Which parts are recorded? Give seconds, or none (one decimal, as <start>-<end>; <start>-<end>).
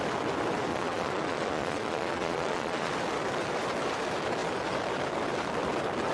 0.0-0.7; 2.9-6.1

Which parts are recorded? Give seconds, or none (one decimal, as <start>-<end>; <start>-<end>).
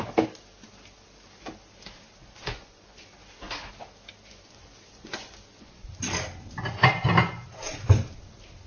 0.0-2.2; 3.0-4.3; 5.8-8.7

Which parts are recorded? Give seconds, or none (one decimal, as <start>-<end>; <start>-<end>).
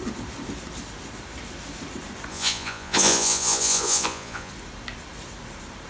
0.0-2.3; 4.5-5.9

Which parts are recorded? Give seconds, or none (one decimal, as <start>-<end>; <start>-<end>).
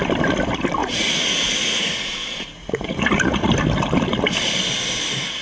0.0-0.8; 3.5-5.4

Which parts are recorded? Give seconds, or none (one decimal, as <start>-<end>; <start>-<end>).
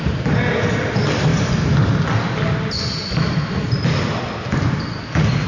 0.0-5.5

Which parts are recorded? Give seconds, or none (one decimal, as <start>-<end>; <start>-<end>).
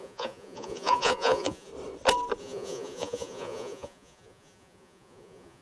1.7-2.4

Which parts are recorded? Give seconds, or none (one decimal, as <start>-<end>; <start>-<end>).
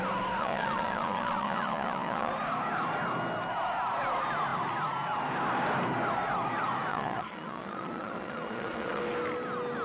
0.0-0.4; 2.3-6.9; 9.0-9.8